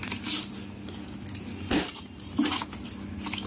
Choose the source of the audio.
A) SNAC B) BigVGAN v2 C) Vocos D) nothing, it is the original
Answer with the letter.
D